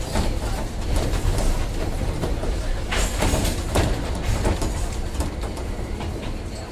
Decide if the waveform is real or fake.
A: fake